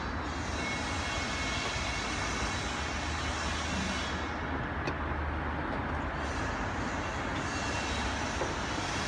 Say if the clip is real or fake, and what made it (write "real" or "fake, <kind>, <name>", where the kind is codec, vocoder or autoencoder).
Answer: real